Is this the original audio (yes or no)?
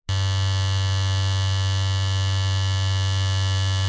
yes